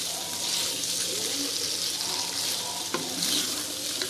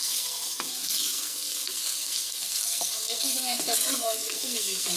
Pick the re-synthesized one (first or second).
second